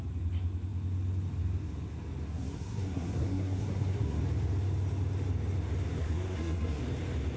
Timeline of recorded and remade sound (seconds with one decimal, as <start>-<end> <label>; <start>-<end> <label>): 0.0-2.3 recorded; 2.3-4.2 remade; 4.2-6.0 recorded; 6.0-6.8 remade; 6.8-7.4 recorded